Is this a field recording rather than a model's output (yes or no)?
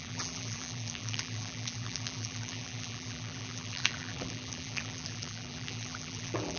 no